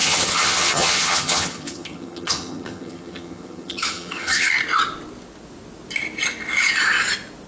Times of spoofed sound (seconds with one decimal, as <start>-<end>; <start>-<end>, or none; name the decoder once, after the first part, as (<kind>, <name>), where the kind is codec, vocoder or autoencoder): 0.0-4.5 (vocoder, HiFi-GAN)